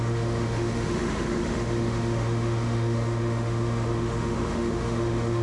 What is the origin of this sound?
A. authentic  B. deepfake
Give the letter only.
B